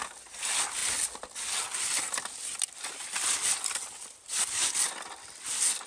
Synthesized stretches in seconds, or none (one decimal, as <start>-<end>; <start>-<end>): none